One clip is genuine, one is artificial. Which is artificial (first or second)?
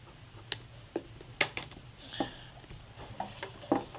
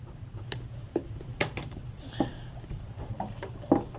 second